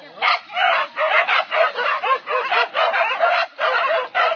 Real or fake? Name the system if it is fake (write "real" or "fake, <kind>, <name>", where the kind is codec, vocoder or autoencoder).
real